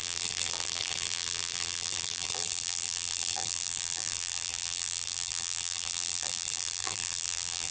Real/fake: fake